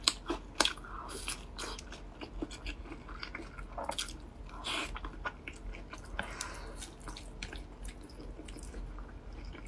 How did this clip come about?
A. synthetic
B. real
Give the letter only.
B